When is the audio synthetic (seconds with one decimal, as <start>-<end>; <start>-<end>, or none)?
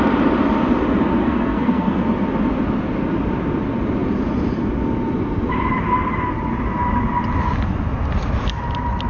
1.2-2.0